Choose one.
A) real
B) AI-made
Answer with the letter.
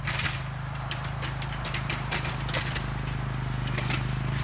B